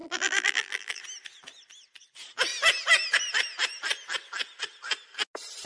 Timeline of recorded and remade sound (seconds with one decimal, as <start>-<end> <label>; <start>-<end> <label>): 0.0-1.0 remade; 1.0-5.7 recorded